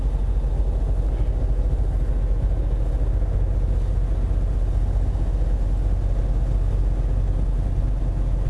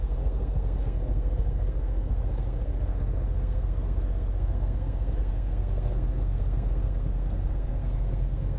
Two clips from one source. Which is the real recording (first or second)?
first